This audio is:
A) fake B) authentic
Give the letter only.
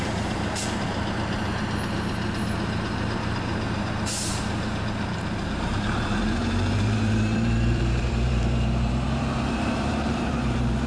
A